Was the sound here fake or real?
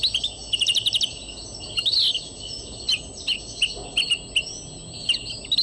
real